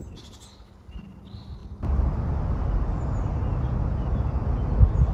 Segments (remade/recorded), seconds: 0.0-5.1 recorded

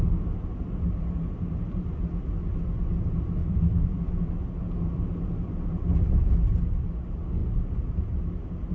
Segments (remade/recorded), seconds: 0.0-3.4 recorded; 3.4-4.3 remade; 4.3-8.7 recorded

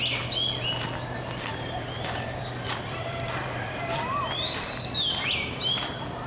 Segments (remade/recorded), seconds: 0.0-1.5 recorded; 1.5-5.3 remade; 5.3-6.3 recorded